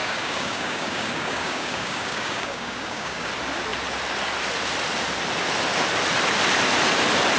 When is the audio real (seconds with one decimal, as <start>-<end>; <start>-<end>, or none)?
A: 3.3-7.4